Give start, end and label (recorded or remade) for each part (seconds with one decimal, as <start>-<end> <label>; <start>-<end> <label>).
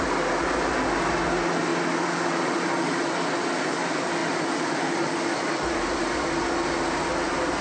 0.0-1.7 recorded; 1.7-2.8 remade; 2.8-7.6 recorded